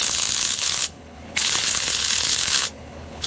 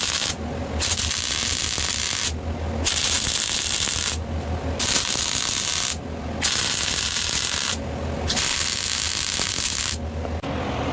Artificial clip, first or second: first